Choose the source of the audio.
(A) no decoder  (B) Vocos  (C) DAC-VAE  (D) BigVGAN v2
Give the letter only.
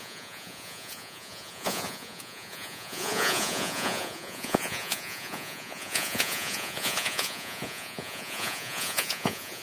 B